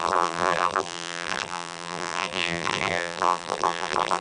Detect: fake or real fake